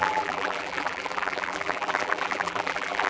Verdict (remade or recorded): remade